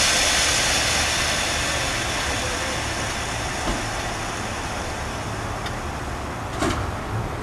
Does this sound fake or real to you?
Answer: real